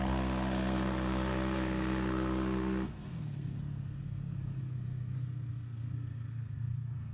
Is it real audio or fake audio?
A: fake